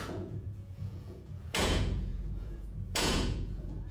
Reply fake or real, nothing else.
fake